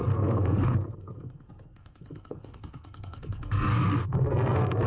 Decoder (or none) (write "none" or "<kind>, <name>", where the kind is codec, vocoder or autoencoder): codec, SNAC